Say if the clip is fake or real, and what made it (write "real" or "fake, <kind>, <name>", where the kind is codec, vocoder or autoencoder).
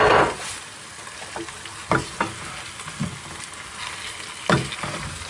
real